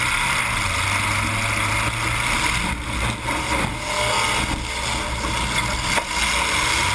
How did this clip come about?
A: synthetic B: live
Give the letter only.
B